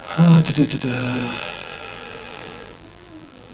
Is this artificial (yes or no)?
yes